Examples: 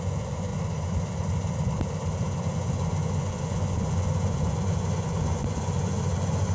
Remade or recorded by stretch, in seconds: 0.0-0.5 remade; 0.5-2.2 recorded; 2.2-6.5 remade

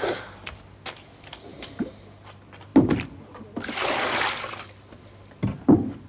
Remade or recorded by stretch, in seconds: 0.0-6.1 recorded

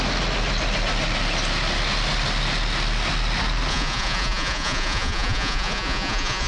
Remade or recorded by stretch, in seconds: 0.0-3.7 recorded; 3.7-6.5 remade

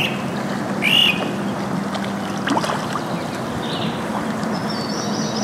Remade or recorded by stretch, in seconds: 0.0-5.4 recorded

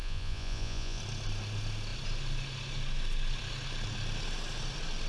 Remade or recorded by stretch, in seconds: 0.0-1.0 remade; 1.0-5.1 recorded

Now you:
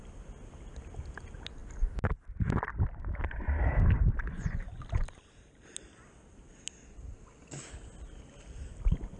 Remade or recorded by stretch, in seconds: 0.0-9.2 recorded